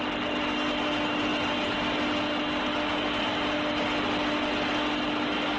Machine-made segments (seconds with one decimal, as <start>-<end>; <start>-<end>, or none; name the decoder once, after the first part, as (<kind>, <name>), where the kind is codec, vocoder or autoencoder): none